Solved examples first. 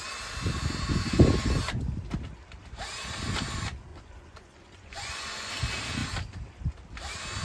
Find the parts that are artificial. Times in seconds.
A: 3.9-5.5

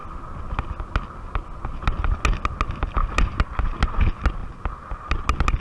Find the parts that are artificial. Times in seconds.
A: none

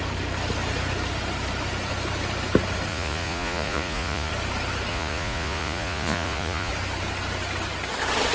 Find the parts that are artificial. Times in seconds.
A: 2.9-4.3; 4.9-6.7